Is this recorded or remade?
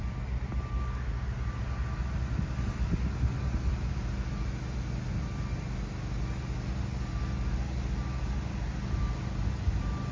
recorded